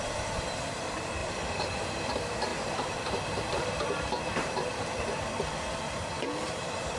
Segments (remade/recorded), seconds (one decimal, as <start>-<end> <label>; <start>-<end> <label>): 0.0-1.2 recorded; 1.2-2.1 remade; 2.1-2.5 recorded; 2.5-5.3 remade; 5.3-7.0 recorded